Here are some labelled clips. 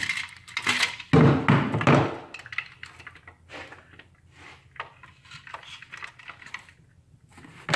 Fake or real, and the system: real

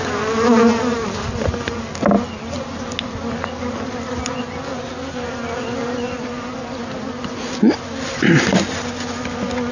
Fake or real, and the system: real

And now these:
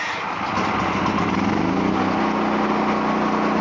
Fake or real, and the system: real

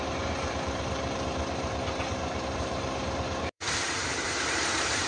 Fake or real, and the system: fake, vocoder, BigVGAN v2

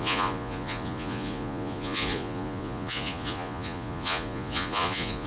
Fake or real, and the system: fake, vocoder, Vocos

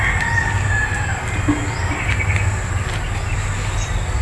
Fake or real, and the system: real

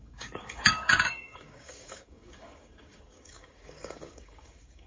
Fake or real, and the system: fake, codec, DAC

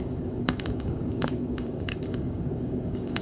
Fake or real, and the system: fake, codec, DAC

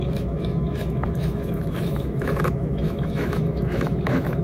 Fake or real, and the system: fake, autoencoder, DAC-VAE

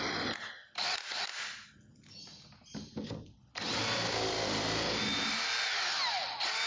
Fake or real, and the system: real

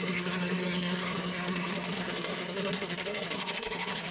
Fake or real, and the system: fake, codec, SNAC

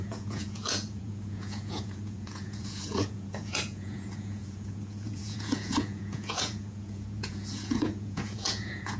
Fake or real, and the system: fake, vocoder, Vocos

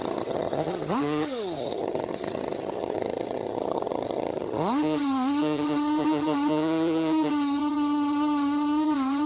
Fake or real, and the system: fake, vocoder, HiFi-GAN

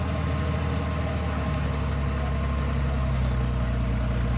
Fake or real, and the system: real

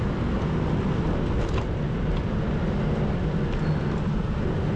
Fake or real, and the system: real